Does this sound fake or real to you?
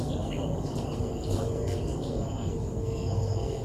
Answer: fake